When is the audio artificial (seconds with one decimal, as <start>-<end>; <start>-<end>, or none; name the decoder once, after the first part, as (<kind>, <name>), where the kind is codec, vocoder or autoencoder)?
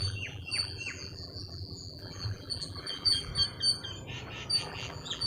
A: 0.0-3.3 (vocoder, BigVGAN v2); 4.6-5.3